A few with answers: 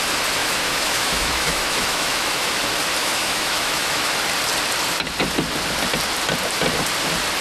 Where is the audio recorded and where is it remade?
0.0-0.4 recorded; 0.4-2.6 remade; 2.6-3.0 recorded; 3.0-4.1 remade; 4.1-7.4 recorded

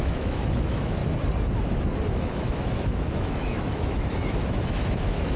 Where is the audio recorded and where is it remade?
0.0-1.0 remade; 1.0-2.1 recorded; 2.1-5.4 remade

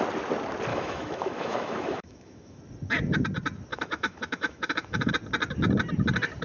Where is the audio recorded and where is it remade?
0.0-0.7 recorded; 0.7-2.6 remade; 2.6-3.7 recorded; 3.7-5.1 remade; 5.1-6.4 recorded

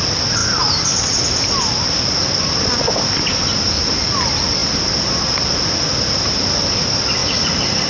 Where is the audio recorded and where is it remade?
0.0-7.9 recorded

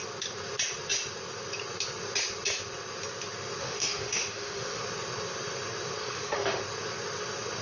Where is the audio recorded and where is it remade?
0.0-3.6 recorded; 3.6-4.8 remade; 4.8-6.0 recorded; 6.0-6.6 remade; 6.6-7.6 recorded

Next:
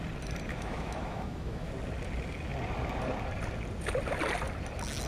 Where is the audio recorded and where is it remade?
0.0-0.5 recorded; 0.5-1.7 remade; 1.7-5.1 recorded